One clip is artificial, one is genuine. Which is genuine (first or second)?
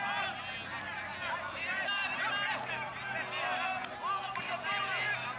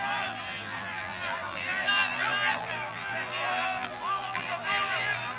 first